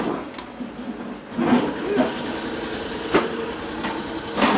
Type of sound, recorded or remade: recorded